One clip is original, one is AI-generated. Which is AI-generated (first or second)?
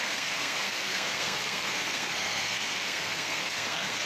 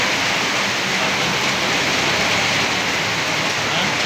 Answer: first